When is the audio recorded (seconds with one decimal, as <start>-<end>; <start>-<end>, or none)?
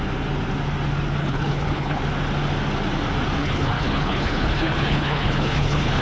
0.0-1.2; 2.0-3.4